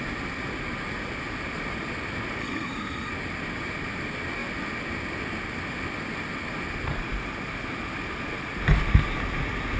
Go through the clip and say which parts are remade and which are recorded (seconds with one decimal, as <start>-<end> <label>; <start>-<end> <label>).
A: 0.0-2.4 recorded; 2.4-3.1 remade; 3.1-9.8 recorded